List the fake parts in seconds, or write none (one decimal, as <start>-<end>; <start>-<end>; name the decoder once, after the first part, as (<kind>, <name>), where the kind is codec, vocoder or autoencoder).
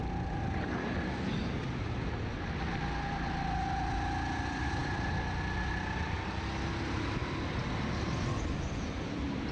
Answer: none